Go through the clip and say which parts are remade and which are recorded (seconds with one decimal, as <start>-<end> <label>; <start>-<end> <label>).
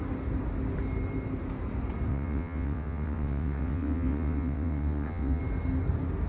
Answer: 0.0-2.1 recorded; 2.1-5.4 remade; 5.4-6.3 recorded